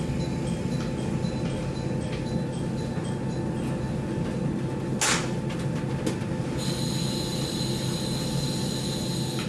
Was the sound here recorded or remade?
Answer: recorded